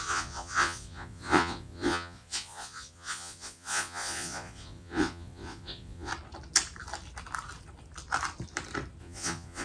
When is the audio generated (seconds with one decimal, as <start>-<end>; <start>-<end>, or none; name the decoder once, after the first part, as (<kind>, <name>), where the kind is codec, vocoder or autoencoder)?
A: 0.0-6.1 (vocoder, Vocos); 9.0-9.6